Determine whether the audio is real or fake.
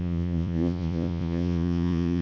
fake